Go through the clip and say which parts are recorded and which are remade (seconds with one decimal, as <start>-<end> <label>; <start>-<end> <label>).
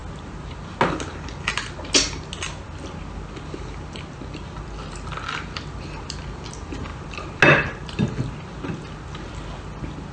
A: 0.0-10.1 recorded